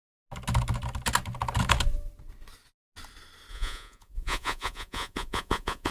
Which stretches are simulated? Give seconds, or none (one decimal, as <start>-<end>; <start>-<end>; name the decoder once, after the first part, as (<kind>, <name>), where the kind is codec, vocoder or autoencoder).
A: 3.5-5.9 (vocoder, Vocos)

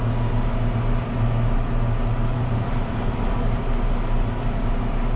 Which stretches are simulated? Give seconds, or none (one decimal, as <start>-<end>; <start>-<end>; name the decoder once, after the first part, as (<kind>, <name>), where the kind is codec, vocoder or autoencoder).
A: 2.3-3.3 (vocoder, BigVGAN v2)

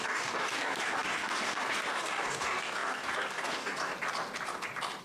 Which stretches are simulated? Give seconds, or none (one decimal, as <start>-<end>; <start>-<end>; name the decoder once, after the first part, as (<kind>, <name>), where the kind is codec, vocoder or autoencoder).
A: 0.0-3.9 (codec, DAC)